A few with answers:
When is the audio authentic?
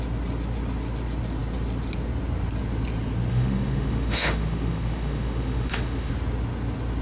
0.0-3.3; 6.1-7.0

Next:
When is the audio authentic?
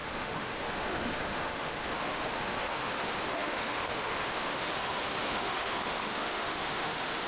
none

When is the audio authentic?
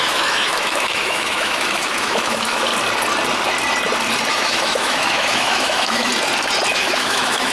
2.7-4.3; 6.1-6.7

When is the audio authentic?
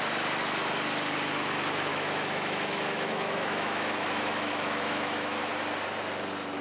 0.0-1.9; 5.5-6.6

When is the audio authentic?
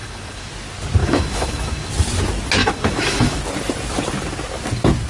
0.5-1.0; 1.9-2.6; 3.4-5.1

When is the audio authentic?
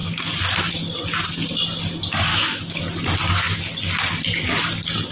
0.0-2.3; 2.8-5.1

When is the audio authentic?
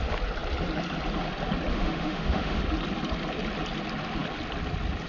0.0-1.7; 2.6-5.1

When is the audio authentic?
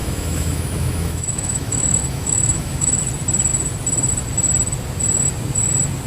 3.0-6.1